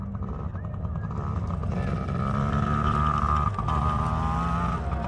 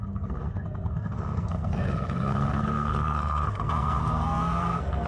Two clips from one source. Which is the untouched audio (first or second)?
first